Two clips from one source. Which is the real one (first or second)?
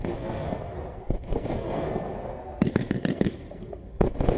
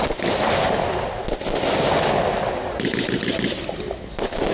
second